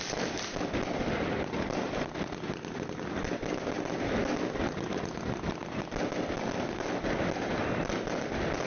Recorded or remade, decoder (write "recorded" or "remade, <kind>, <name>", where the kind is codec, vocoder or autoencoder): recorded